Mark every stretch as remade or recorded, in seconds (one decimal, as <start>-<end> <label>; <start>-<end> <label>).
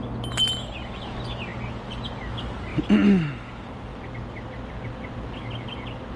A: 0.0-6.2 recorded